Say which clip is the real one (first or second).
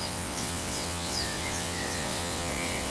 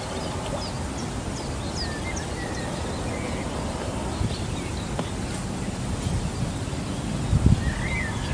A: second